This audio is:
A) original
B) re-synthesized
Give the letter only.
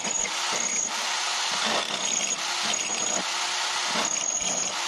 A